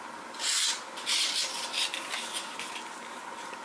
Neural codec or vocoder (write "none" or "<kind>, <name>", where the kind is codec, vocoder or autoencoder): none